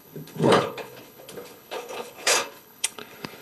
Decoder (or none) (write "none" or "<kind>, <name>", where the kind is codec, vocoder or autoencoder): codec, HILCodec